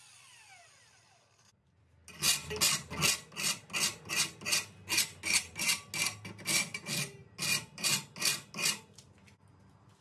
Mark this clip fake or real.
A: real